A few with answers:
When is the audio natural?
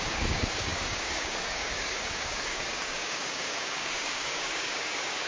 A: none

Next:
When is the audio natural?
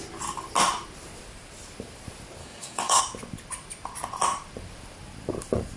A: 0.0-2.4; 3.0-5.8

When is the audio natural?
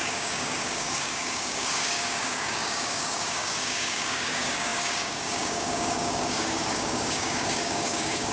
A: none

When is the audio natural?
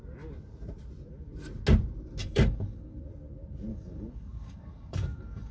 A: 0.0-2.2; 3.0-3.7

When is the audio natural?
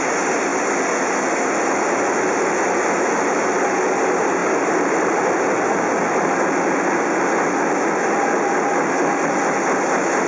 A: 0.0-10.3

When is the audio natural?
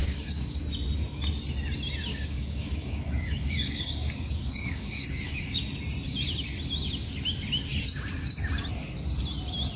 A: 0.6-2.1; 5.6-9.8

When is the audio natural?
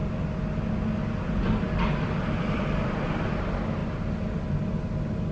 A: 0.0-5.3